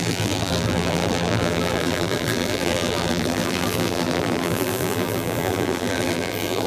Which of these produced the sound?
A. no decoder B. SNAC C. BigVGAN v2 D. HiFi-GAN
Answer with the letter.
C